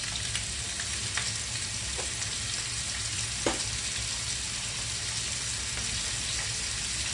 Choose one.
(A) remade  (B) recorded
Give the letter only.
B